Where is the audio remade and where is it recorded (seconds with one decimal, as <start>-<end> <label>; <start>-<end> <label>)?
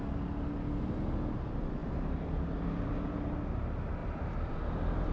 0.0-5.1 recorded